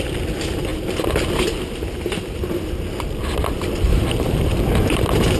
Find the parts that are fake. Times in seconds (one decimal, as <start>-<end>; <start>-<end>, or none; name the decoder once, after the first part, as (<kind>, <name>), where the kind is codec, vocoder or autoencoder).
0.0-0.7 (vocoder, BigVGAN v2); 3.9-5.4